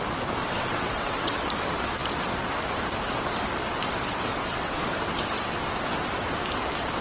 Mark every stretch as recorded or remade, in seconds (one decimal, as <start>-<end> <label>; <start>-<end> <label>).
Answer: 0.0-0.4 recorded; 0.4-1.4 remade; 1.4-4.3 recorded; 4.3-4.8 remade; 4.8-7.0 recorded

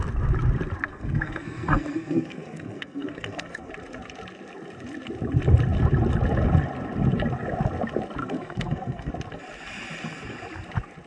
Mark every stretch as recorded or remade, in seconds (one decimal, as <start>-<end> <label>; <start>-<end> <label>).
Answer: 0.0-0.9 recorded; 0.9-3.7 remade; 3.7-8.2 recorded; 8.2-9.1 remade; 9.1-11.1 recorded

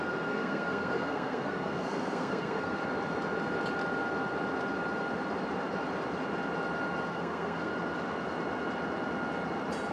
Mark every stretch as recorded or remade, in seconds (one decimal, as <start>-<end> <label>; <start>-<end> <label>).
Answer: 0.0-2.8 remade; 2.8-7.1 recorded; 7.1-7.7 remade; 7.7-9.9 recorded

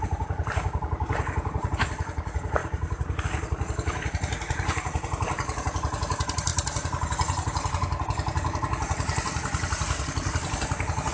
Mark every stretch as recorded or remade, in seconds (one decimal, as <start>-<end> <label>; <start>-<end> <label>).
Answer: 0.0-11.1 recorded